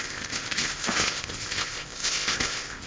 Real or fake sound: fake